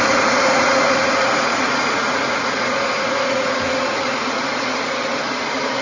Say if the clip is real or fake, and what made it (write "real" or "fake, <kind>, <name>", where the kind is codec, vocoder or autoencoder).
fake, vocoder, Vocos